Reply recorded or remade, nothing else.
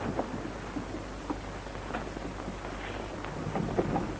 recorded